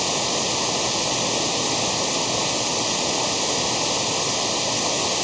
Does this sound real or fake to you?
real